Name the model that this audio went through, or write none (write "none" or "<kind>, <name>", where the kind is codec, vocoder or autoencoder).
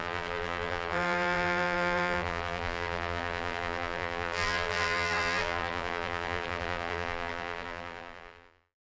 vocoder, BigVGAN v2